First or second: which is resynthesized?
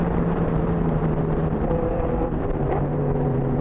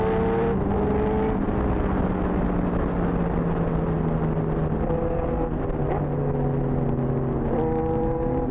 first